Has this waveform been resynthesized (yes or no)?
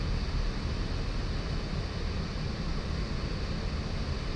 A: no